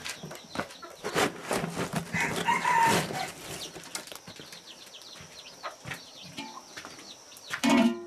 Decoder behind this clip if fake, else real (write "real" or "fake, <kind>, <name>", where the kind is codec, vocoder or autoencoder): real